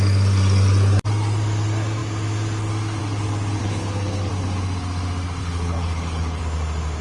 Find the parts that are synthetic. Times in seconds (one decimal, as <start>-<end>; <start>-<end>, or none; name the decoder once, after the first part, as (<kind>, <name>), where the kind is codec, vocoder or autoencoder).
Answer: 3.6-4.3 (codec, HILCodec); 5.4-6.4